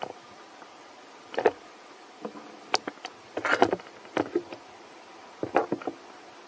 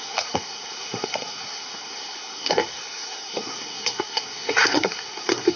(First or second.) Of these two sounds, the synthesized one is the second